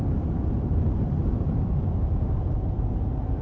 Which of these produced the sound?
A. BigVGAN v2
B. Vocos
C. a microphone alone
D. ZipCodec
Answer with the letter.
A